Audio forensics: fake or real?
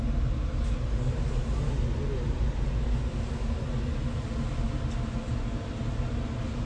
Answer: real